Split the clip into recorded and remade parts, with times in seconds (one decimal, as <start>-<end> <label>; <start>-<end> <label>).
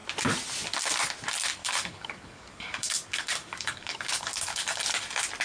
0.0-1.6 recorded; 1.6-4.8 remade; 4.8-5.4 recorded